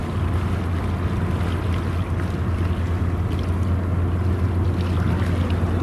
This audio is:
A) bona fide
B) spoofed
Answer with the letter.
A